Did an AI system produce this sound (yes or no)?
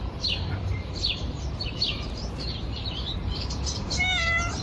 yes